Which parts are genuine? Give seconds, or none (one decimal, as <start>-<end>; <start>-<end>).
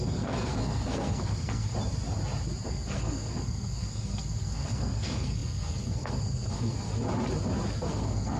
1.7-2.7; 6.9-7.7